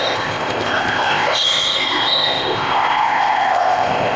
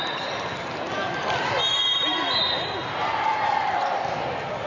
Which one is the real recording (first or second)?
second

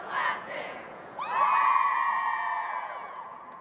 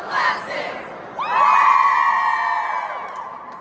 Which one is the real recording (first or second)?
second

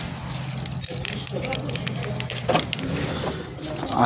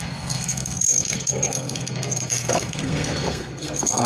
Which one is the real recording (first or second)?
first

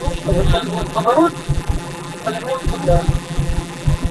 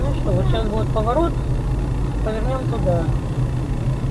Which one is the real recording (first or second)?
second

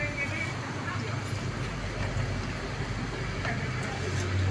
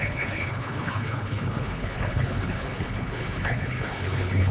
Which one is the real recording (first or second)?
first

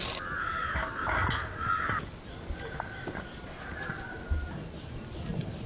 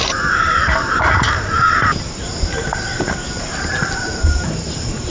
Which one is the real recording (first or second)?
first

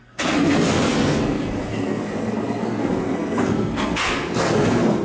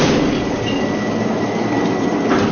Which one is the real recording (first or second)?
second